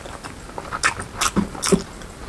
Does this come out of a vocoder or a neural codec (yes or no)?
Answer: no